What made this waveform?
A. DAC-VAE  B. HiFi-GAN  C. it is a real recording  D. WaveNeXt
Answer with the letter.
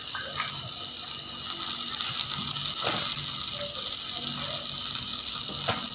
C